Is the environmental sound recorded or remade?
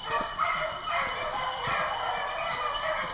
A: recorded